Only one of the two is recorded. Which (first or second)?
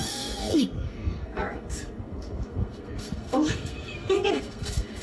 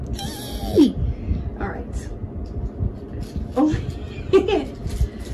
second